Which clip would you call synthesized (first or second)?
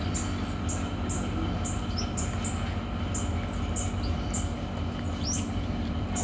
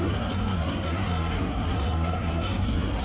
second